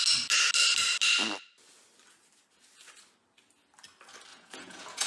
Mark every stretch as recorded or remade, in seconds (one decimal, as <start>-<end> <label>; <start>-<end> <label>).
0.0-4.3 recorded; 4.3-5.1 remade